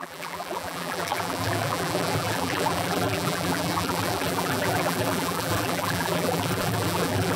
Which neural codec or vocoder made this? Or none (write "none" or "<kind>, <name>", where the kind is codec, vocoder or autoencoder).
vocoder, BigVGAN v2